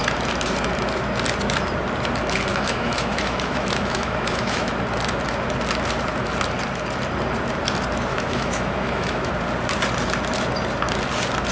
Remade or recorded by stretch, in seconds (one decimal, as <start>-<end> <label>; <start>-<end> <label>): 0.0-2.5 recorded; 2.5-4.7 remade; 4.7-8.1 recorded; 8.1-9.3 remade; 9.3-11.5 recorded